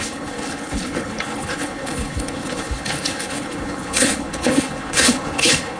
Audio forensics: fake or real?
fake